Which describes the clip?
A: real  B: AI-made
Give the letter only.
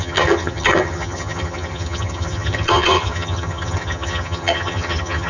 B